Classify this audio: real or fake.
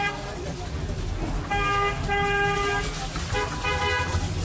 real